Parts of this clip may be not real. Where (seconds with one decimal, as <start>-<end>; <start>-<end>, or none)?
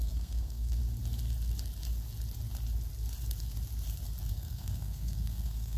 0.0-0.8; 4.3-5.8